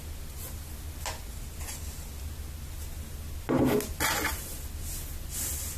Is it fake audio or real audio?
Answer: real